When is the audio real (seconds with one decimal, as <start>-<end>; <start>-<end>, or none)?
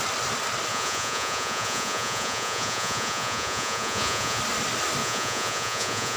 0.0-0.7; 4.4-5.0